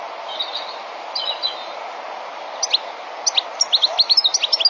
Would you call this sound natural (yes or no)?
yes